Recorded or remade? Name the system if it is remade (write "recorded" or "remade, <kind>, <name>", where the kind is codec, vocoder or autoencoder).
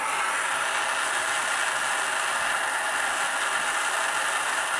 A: recorded